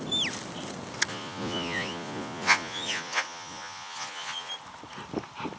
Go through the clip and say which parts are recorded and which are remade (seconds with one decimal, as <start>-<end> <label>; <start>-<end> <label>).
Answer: 0.0-1.1 recorded; 1.1-4.5 remade; 4.5-5.6 recorded